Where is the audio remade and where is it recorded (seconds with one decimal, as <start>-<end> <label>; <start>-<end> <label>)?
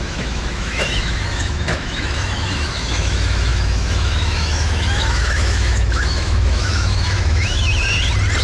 0.0-7.7 remade; 7.7-8.4 recorded